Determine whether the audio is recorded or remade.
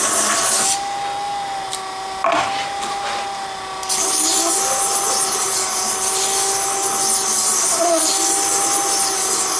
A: recorded